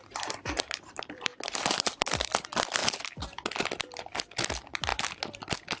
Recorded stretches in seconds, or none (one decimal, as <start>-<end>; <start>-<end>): 1.3-2.1; 2.8-4.5; 4.9-5.8